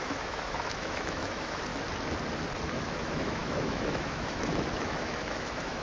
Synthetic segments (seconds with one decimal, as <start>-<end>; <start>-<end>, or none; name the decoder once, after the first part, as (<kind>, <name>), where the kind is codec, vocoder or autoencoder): 0.0-1.7 (autoencoder, DAC-VAE); 2.7-5.8